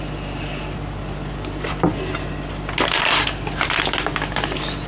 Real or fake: real